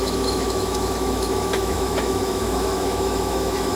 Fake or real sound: fake